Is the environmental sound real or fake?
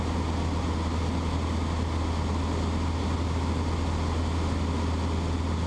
real